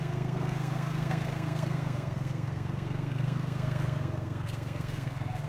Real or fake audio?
fake